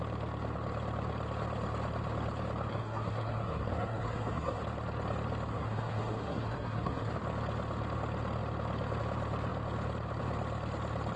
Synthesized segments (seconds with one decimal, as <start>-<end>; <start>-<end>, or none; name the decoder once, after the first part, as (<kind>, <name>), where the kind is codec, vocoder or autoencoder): 2.7-4.6 (codec, SNAC); 5.5-7.1